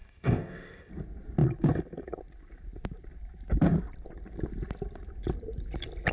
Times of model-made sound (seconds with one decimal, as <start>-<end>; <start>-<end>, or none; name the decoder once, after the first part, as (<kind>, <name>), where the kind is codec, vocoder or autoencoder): 0.0-0.9 (codec, ZipCodec)

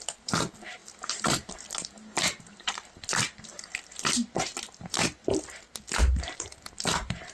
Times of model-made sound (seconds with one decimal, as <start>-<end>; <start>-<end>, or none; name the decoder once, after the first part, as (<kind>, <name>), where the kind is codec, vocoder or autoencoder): none

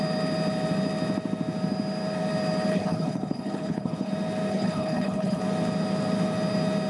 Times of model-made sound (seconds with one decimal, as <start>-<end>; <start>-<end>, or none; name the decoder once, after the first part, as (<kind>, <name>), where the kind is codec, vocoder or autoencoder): 2.7-4.1 (codec, HILCodec); 4.5-5.4

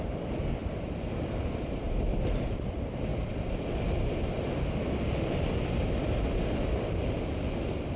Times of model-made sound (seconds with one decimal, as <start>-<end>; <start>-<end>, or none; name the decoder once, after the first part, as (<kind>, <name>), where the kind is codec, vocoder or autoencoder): none

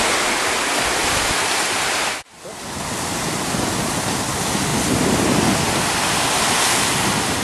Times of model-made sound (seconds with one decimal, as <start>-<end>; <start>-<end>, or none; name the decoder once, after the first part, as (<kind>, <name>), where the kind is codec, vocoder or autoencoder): 1.0-2.4 (vocoder, BigVGAN v2)